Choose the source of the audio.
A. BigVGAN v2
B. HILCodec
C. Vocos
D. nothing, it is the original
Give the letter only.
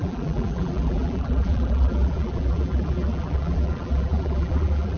A